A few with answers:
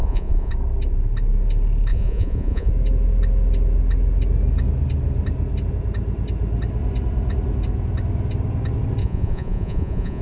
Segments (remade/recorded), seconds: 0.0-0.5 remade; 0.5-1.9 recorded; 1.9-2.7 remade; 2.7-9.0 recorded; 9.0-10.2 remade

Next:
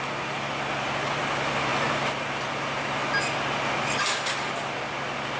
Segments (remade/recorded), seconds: 0.0-5.4 recorded